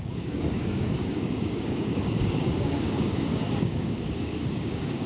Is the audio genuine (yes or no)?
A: no